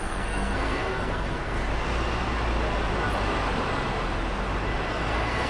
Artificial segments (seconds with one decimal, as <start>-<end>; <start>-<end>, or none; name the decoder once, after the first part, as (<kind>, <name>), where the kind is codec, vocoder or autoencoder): 0.0-1.6 (codec, SNAC); 4.9-5.5